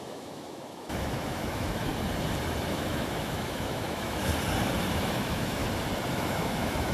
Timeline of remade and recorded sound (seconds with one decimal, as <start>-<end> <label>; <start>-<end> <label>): 0.0-1.9 remade; 1.9-2.7 recorded; 2.7-4.3 remade; 4.3-4.9 recorded; 4.9-5.6 remade; 5.6-6.1 recorded; 6.1-6.9 remade